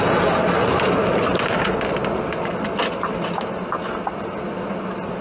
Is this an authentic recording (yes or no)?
yes